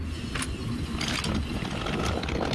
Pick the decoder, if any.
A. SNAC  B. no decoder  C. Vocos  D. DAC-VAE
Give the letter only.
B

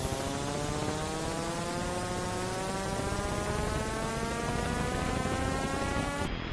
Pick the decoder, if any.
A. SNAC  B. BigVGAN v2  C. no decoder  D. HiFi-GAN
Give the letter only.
C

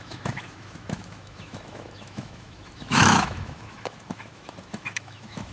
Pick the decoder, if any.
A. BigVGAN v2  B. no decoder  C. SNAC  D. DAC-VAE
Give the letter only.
D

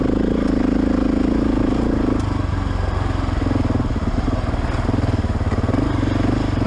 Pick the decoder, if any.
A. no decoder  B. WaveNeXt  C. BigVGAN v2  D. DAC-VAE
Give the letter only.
A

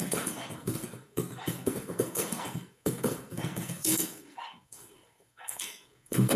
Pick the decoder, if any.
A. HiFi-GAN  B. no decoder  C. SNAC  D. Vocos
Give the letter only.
C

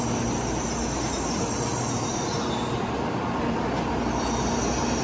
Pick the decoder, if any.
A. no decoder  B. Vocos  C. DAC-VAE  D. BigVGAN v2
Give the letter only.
A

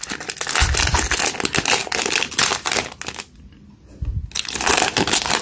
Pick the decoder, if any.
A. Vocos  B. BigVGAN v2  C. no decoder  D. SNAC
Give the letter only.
C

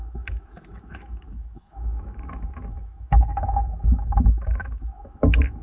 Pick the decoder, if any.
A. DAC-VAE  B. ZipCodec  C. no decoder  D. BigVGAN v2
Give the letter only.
A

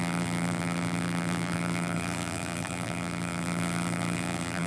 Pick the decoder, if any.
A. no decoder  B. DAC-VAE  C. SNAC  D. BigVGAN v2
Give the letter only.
D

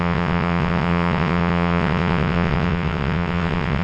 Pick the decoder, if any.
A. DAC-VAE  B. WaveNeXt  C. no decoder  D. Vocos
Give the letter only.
B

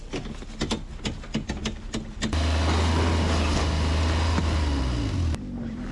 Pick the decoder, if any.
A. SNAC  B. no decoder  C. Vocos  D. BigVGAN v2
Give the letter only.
B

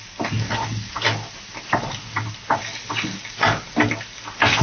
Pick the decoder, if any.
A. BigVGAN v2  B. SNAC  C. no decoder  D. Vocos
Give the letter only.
C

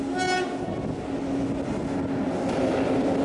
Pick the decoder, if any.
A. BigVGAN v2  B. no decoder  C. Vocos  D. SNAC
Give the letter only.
B